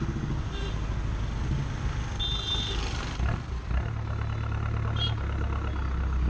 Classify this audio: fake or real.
real